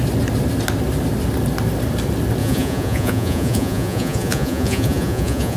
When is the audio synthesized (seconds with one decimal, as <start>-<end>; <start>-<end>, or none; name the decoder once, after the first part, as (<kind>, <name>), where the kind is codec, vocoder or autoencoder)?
2.4-5.6 (vocoder, Vocos)